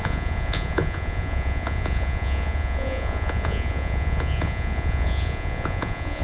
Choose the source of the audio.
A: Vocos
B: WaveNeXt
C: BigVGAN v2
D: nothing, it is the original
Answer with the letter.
A